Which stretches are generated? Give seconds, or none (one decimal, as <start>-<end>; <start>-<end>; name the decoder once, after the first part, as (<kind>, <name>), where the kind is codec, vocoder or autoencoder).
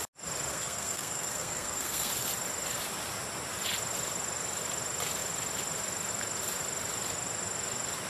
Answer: 0.5-2.1 (codec, SNAC)